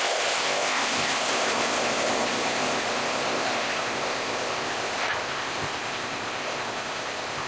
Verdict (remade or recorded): remade